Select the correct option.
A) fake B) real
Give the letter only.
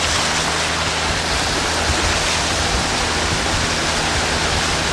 B